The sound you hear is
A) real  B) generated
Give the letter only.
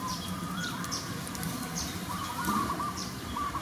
B